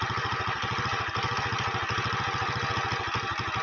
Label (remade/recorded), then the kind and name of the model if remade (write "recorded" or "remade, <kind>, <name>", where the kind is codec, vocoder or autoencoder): recorded